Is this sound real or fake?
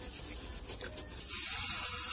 real